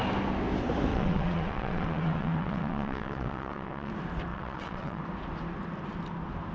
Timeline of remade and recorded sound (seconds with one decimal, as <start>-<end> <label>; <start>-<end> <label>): 0.0-0.9 recorded; 0.9-3.9 remade; 3.9-4.3 recorded; 4.3-5.0 remade; 5.0-6.5 recorded